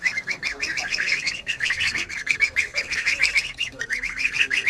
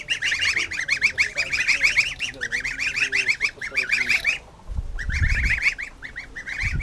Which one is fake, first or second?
first